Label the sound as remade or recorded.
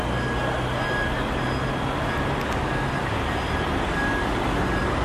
recorded